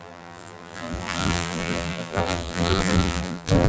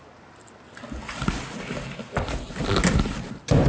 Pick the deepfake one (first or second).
first